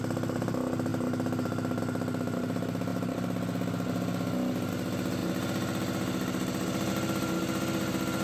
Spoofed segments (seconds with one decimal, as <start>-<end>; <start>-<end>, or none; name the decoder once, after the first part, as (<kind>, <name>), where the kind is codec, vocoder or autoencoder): none